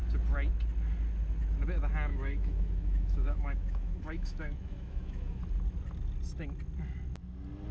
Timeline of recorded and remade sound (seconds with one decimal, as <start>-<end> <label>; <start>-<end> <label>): 0.0-2.1 recorded; 2.1-5.4 remade; 5.4-7.7 recorded